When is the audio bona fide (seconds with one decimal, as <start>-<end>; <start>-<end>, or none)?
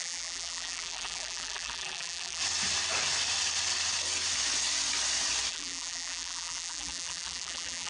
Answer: 2.4-5.5